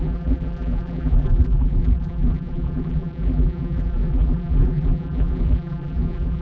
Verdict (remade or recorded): remade